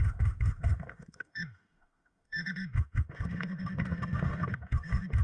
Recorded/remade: remade